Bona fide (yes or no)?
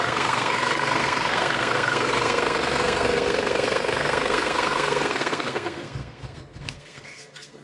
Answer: no